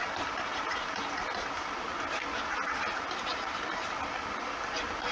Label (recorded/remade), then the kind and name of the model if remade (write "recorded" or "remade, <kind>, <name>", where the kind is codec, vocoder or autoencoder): recorded